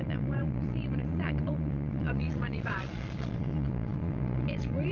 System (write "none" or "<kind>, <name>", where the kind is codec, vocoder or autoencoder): vocoder, Vocos